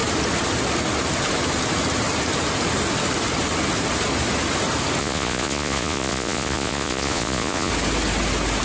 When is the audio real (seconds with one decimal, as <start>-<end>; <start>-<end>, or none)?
0.0-5.0; 7.7-8.6